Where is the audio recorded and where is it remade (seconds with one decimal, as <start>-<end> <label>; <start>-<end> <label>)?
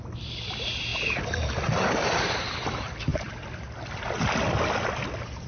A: 0.0-5.5 recorded